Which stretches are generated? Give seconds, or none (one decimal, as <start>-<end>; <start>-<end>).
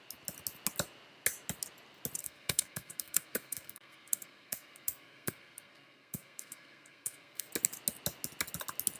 2.2-7.5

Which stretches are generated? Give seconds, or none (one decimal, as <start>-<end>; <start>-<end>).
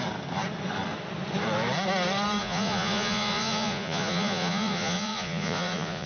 2.4-6.1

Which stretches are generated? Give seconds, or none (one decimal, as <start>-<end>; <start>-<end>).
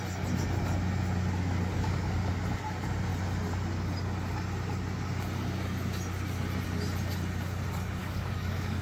1.7-2.3; 8.0-8.8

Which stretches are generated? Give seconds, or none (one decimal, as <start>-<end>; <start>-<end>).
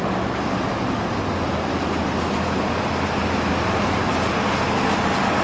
3.5-4.5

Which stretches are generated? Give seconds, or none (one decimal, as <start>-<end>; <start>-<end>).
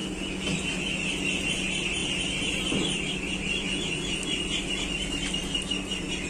2.0-5.7